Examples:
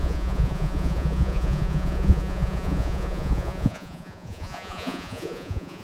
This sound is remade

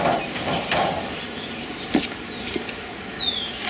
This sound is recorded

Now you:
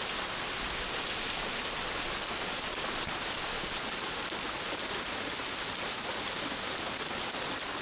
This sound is recorded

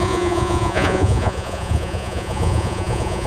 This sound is remade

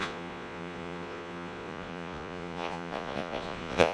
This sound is remade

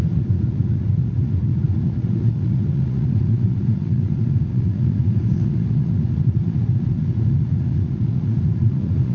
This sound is remade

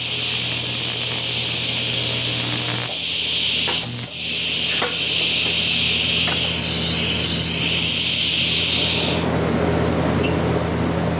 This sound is recorded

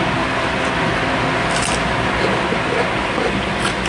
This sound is recorded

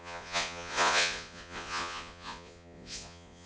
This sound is remade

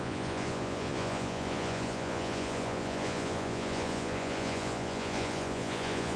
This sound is remade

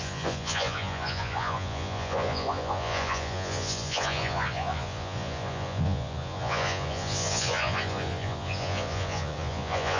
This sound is remade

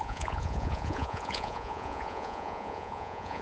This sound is remade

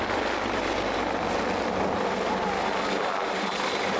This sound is recorded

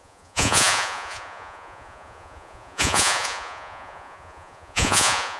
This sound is remade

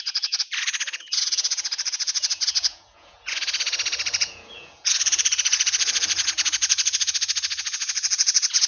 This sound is remade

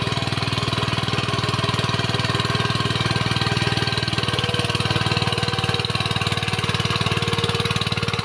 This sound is recorded